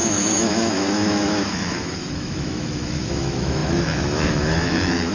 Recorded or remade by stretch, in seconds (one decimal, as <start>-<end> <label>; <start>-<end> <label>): 0.0-5.1 remade